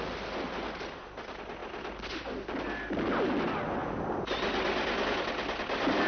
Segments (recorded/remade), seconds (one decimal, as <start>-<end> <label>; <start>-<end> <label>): 0.0-6.1 recorded